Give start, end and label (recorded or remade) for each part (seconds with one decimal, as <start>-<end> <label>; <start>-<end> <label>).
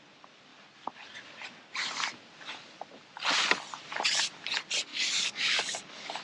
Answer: 0.0-4.9 recorded; 4.9-6.2 remade